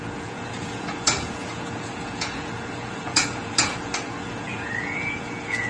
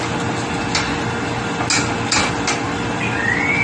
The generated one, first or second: first